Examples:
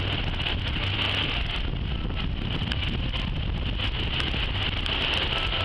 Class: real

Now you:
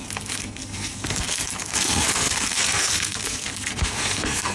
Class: fake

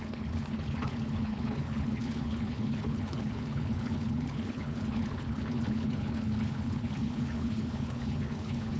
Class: fake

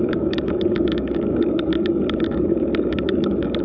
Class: fake